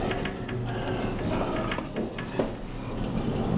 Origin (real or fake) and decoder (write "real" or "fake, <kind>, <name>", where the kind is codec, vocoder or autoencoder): real